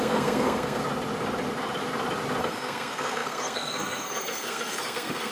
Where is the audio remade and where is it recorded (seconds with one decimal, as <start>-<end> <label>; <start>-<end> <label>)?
0.0-0.8 remade; 0.8-2.4 recorded; 2.4-5.3 remade

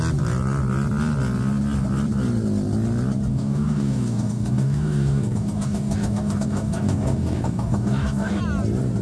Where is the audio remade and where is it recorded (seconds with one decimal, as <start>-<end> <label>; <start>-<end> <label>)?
0.0-3.3 recorded; 3.3-8.4 remade; 8.4-9.0 recorded

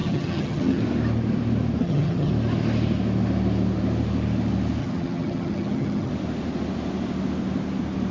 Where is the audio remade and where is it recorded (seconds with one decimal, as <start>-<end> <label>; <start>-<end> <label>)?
0.0-0.8 remade; 0.8-1.8 recorded; 1.8-2.3 remade; 2.3-4.8 recorded; 4.8-6.1 remade; 6.1-8.1 recorded

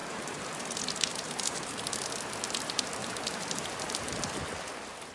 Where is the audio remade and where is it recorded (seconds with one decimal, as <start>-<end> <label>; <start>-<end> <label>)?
0.0-1.8 remade; 1.8-3.0 recorded; 3.0-4.2 remade; 4.2-5.1 recorded

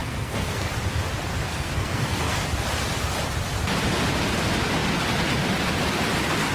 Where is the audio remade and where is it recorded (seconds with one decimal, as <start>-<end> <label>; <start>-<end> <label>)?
0.0-0.7 remade; 0.7-1.3 recorded; 1.3-2.4 remade; 2.4-6.5 recorded

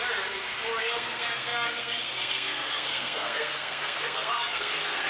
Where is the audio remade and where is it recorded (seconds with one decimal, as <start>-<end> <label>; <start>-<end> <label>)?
0.0-0.8 recorded; 0.8-5.1 remade

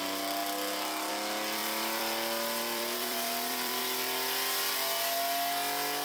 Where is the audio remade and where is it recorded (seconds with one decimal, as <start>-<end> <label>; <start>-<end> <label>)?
0.0-1.6 recorded; 1.6-3.8 remade; 3.8-6.0 recorded